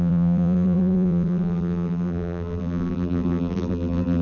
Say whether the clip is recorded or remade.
remade